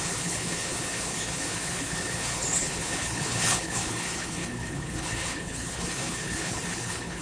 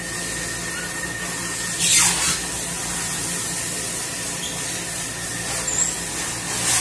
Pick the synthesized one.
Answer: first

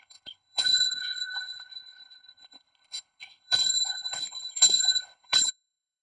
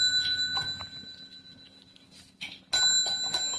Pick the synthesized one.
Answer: first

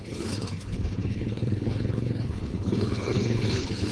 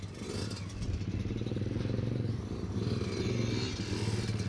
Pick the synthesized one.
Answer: first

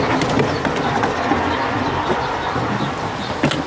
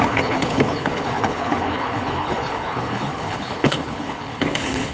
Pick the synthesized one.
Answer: second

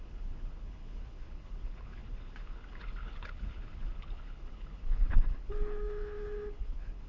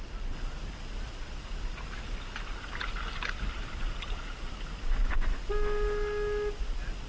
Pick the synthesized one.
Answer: first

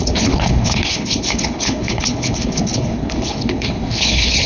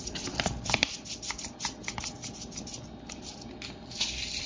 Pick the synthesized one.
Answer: first